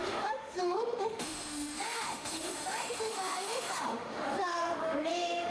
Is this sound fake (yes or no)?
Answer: yes